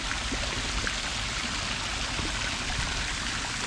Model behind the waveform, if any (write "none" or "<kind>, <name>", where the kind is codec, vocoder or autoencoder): none